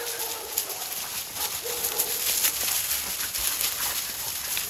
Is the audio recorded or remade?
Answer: recorded